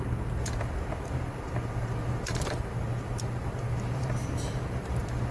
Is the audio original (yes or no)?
no